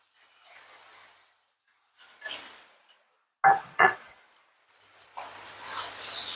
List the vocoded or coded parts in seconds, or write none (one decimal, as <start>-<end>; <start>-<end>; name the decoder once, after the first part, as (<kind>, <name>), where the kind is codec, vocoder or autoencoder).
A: 3.6-4.2 (vocoder, WaveNeXt)